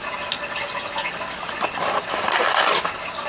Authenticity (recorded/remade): recorded